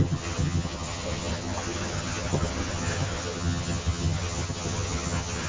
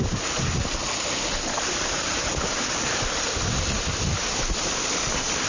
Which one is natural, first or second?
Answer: second